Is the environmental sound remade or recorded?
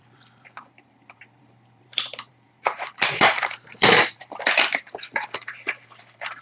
remade